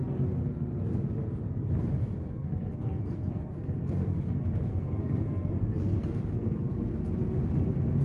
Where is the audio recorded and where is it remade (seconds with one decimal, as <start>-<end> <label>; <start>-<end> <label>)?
0.0-2.3 recorded; 2.3-7.1 remade; 7.1-8.0 recorded